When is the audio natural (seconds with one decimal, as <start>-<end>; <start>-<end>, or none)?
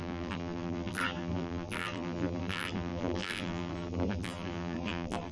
none